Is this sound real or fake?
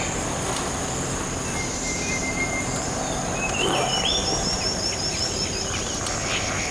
real